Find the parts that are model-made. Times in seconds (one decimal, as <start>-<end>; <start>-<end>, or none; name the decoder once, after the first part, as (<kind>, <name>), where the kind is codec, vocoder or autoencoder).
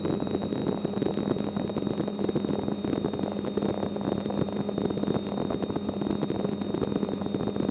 none